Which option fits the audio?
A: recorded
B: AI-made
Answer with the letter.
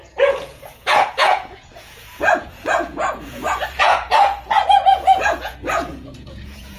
B